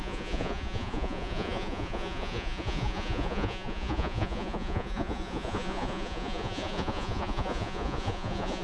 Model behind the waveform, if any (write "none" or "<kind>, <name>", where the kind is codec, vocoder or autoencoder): vocoder, Vocos